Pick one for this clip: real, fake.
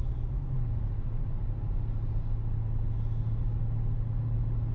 real